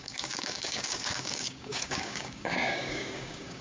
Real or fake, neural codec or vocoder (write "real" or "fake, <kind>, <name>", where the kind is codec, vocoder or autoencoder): fake, codec, DAC